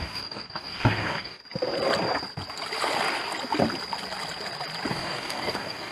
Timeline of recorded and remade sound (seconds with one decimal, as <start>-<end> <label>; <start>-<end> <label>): 0.0-1.4 remade; 1.4-4.9 recorded; 4.9-5.9 remade